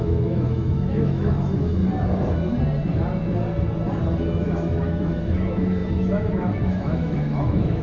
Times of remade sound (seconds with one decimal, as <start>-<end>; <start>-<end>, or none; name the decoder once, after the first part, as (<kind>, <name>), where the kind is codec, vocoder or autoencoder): 0.0-1.8 (autoencoder, DAC-VAE); 4.4-7.8